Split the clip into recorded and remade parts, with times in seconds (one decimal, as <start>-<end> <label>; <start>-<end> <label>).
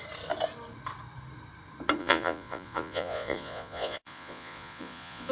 0.0-2.0 recorded; 2.0-5.3 remade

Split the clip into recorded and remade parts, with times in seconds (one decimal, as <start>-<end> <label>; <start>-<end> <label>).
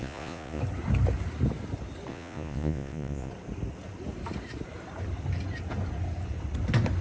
0.0-0.6 remade; 0.6-2.1 recorded; 2.1-3.3 remade; 3.3-7.0 recorded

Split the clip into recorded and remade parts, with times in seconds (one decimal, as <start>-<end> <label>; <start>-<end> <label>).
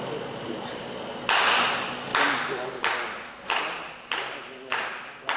0.0-5.4 recorded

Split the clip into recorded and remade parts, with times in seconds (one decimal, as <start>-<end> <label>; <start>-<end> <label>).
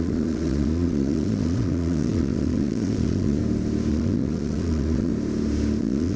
0.0-3.4 remade; 3.4-3.9 recorded; 3.9-5.1 remade; 5.1-5.8 recorded; 5.8-6.2 remade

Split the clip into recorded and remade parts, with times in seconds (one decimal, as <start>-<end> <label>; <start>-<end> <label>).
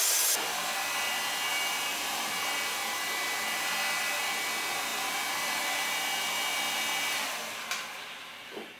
0.0-1.5 recorded; 1.5-2.2 remade; 2.2-8.8 recorded